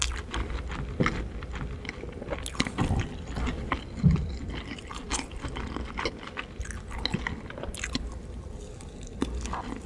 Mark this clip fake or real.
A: real